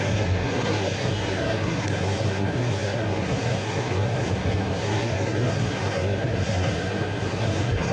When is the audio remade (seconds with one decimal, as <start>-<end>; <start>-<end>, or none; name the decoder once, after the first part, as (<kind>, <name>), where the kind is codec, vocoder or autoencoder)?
0.0-7.9 (codec, SNAC)